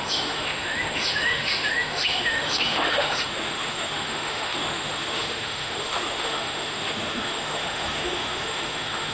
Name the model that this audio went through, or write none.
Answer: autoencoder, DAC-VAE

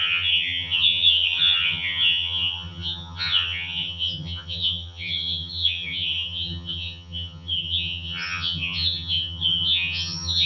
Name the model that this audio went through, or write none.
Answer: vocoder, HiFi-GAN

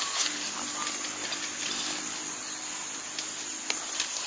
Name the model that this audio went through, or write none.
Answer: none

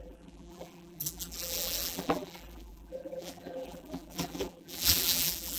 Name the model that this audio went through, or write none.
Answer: vocoder, BigVGAN v2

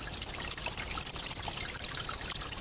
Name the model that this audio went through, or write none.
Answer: none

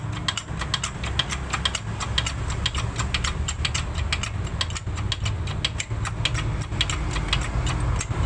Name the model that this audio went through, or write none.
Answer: none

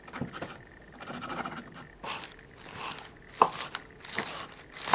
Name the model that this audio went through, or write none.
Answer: none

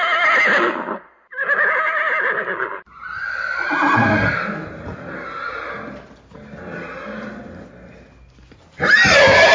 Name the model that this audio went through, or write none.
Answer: none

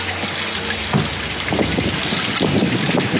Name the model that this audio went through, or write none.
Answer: none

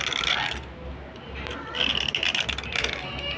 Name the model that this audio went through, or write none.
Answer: none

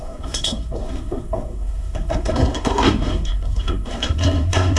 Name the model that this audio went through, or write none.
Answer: codec, SNAC